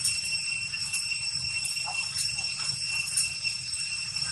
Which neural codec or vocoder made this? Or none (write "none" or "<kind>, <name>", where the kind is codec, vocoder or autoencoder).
vocoder, BigVGAN v2